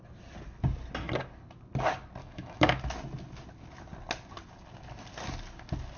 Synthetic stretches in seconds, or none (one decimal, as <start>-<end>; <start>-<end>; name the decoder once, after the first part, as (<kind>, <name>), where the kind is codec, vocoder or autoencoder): 2.2-2.8 (autoencoder, DAC-VAE)